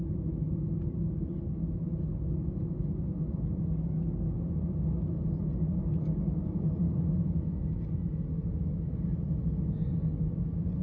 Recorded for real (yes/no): yes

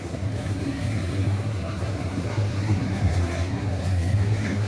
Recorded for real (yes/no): no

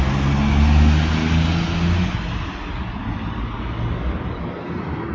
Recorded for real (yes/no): yes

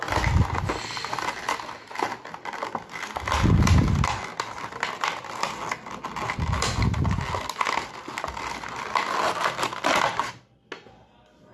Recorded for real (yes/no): yes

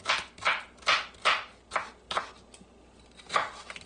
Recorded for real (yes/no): yes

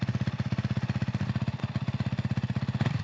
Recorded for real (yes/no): yes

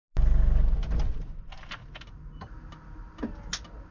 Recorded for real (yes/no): yes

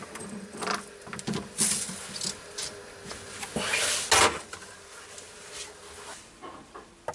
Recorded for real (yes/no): yes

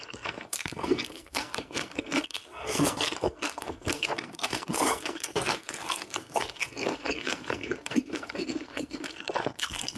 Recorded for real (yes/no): no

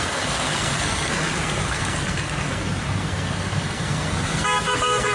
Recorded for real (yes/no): no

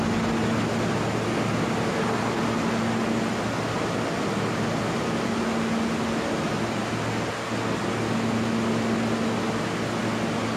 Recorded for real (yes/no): yes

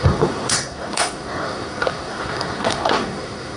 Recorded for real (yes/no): no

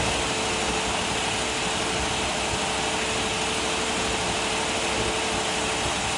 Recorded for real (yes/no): yes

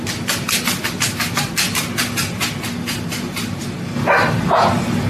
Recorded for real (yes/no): yes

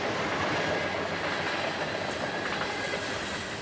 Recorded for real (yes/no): yes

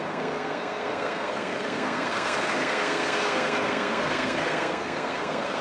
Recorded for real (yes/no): no